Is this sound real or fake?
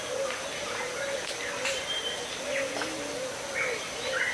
real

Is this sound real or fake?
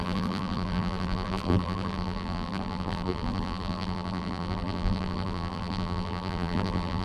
fake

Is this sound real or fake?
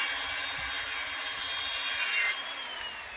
real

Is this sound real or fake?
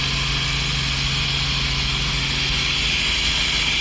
real